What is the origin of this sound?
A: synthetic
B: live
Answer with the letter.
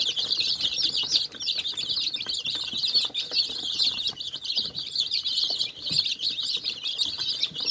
A